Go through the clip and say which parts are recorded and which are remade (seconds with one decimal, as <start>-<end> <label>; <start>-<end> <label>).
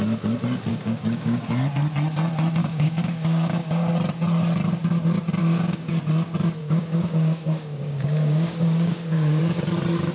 0.0-0.7 recorded; 0.7-1.4 remade; 1.4-2.6 recorded; 2.6-3.9 remade; 3.9-5.4 recorded; 5.4-5.9 remade; 5.9-6.6 recorded; 6.6-9.4 remade; 9.4-10.1 recorded